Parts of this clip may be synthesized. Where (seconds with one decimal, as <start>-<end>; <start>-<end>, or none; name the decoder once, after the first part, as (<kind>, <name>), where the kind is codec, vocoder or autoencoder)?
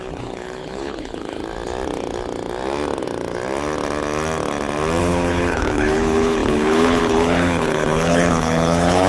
0.0-1.4 (codec, HILCodec); 5.0-9.1